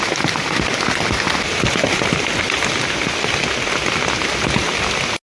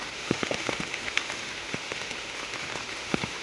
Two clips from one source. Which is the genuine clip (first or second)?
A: first